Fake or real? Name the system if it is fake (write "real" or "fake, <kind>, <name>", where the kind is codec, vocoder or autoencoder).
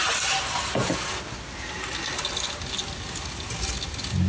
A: real